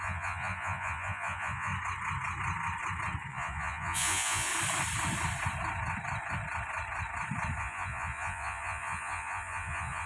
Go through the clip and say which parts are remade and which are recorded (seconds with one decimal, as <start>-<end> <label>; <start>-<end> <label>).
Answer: 0.0-1.7 remade; 1.7-3.3 recorded; 3.3-4.5 remade; 4.5-7.6 recorded; 7.6-10.1 remade